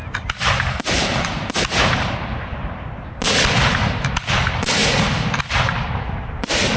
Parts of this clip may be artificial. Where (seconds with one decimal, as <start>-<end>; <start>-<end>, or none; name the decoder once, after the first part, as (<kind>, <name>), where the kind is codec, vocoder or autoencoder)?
none